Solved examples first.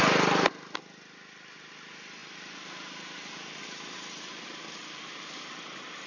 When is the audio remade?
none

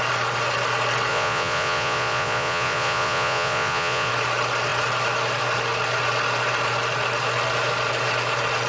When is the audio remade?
1.1-4.1 (vocoder, Vocos)

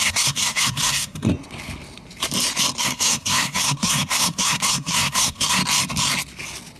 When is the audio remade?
0.0-1.3 (codec, SNAC); 2.8-5.6

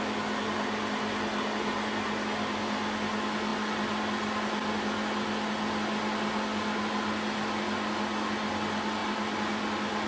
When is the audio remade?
none

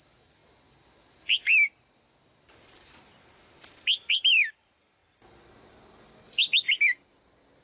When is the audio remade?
0.0-0.4 (vocoder, BigVGAN v2); 3.8-5.0

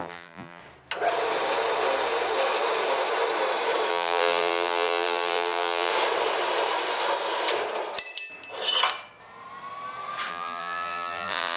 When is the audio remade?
0.0-0.6 (vocoder, BigVGAN v2); 3.9-5.9; 10.3-11.6

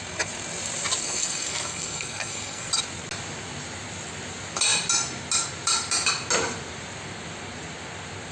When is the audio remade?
1.0-2.7 (codec, SNAC)

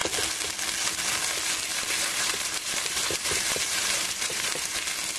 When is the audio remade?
1.7-4.8 (vocoder, BigVGAN v2)